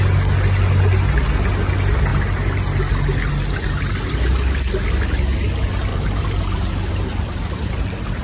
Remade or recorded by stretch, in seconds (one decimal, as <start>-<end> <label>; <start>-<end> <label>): 0.0-5.9 recorded; 5.9-6.4 remade; 6.4-7.1 recorded; 7.1-8.2 remade